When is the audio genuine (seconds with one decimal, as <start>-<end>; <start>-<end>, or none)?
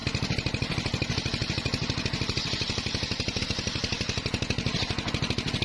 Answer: 0.0-5.6